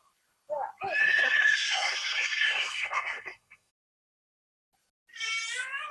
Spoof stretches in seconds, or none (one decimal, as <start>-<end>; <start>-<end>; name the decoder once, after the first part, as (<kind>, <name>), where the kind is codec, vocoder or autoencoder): 1.0-3.7 (codec, SNAC)